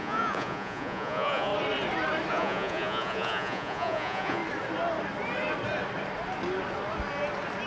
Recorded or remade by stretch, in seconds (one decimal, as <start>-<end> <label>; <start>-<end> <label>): 0.0-1.5 remade; 1.5-2.3 recorded; 2.3-4.4 remade; 4.4-7.7 recorded